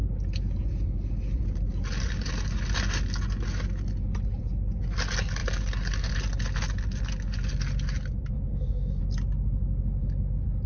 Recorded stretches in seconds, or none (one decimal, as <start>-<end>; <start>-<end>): 0.0-8.5; 9.0-10.7